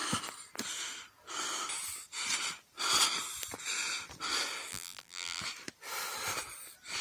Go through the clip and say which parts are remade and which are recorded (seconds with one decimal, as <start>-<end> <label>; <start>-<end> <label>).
0.0-4.7 recorded; 4.7-5.4 remade; 5.4-7.0 recorded